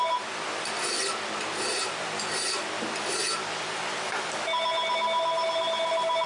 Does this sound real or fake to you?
real